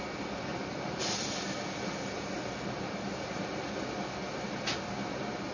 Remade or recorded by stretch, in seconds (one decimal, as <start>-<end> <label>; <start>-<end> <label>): 0.0-5.5 recorded